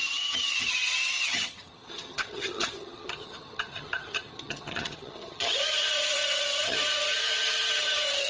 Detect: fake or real fake